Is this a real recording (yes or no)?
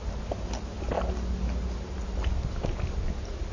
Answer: yes